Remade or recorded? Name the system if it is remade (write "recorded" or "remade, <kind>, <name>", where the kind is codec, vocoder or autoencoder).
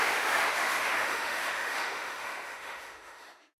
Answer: remade, autoencoder, DAC-VAE